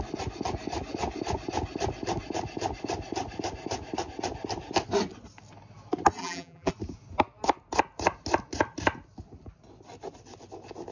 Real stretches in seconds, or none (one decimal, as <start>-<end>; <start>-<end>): 0.0-6.2; 6.7-10.9